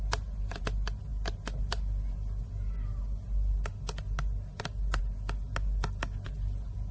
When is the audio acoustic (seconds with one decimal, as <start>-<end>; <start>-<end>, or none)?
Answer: 0.0-6.9